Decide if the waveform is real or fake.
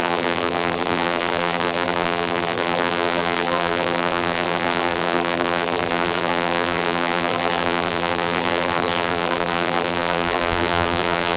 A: fake